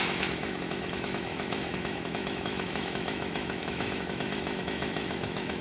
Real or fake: fake